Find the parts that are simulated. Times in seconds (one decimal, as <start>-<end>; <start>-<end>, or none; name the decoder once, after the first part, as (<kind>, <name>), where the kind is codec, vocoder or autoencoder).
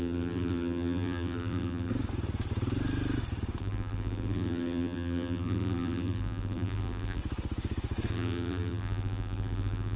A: 0.0-1.9 (vocoder, BigVGAN v2); 3.6-7.2; 8.1-10.0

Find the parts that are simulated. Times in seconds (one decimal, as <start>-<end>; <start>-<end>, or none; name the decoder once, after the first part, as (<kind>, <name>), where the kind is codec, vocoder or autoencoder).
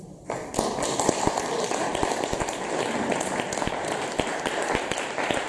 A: 0.0-0.4 (vocoder, BigVGAN v2); 3.7-5.5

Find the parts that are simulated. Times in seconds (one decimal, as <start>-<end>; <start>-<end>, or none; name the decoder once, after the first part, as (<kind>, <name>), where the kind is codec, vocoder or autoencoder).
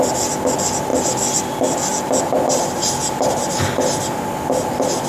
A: none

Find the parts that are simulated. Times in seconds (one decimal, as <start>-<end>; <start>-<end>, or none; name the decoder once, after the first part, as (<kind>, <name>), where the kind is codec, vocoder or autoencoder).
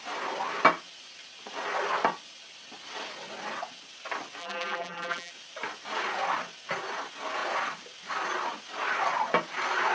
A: 4.4-5.3 (vocoder, BigVGAN v2)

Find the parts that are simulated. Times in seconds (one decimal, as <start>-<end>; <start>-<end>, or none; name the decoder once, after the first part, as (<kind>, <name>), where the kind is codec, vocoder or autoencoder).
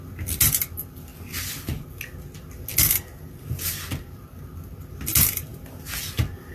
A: none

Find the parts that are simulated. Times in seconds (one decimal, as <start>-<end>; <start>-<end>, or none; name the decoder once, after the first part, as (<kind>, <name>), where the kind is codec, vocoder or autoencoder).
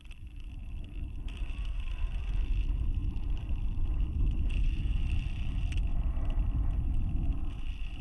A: 0.6-2.3 (vocoder, BigVGAN v2); 3.0-4.2; 5.9-6.6